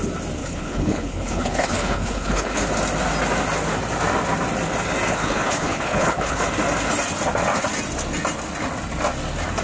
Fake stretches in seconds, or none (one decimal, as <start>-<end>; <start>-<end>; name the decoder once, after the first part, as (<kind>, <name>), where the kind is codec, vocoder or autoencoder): 0.4-2.6 (codec, HILCodec); 5.1-6.4